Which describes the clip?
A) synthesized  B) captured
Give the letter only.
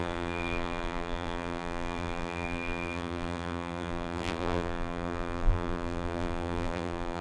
A